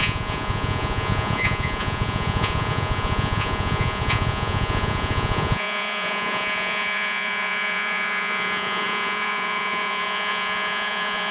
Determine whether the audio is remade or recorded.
remade